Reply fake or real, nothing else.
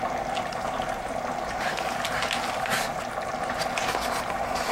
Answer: real